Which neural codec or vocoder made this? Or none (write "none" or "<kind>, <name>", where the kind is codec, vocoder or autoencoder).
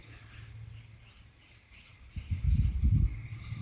none